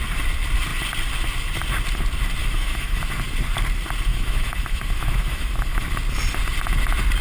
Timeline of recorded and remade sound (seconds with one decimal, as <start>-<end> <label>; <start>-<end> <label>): 0.0-2.4 recorded; 2.4-3.0 remade; 3.0-4.1 recorded; 4.1-5.9 remade; 5.9-7.2 recorded